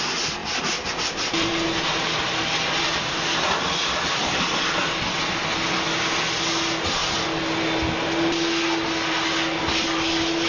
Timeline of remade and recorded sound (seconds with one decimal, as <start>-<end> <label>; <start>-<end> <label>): 0.0-0.4 recorded; 0.4-1.5 remade; 1.5-2.4 recorded; 2.4-4.8 remade; 4.8-10.5 recorded